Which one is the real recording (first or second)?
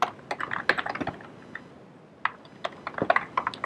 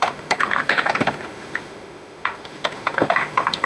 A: first